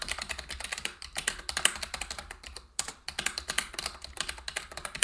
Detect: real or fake fake